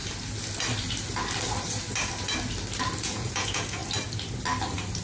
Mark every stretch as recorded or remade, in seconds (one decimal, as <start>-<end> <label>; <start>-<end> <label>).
0.0-3.0 recorded; 3.0-3.8 remade; 3.8-5.0 recorded